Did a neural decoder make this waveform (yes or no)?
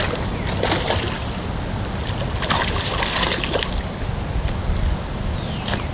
no